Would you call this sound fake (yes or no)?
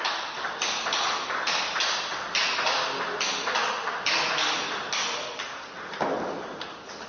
no